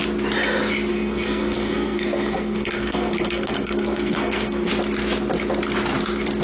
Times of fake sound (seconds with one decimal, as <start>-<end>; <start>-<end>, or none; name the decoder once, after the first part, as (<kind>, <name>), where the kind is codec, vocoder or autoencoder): 0.9-4.7 (codec, SNAC)